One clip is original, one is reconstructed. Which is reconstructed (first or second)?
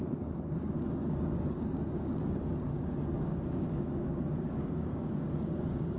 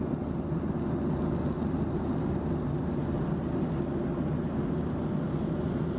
first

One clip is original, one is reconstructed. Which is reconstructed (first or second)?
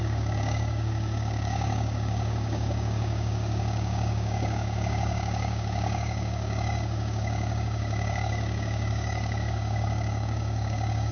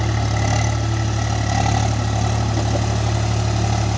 first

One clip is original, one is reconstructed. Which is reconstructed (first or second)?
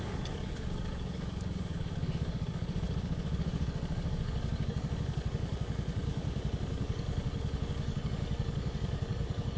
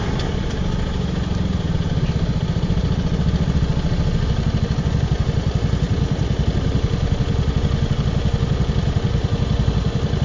first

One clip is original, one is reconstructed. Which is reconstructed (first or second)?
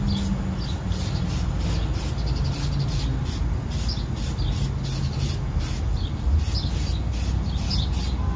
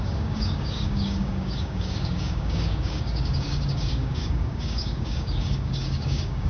second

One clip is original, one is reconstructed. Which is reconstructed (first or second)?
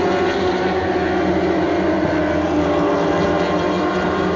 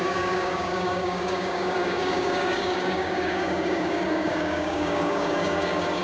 second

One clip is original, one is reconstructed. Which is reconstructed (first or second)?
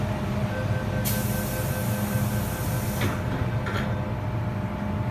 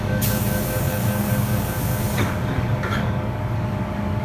second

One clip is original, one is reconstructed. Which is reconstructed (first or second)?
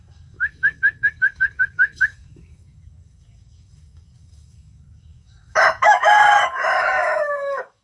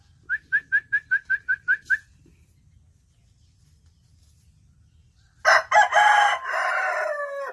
first